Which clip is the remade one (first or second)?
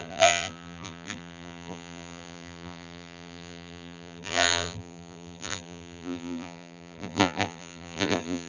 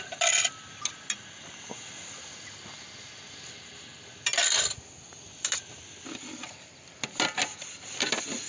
first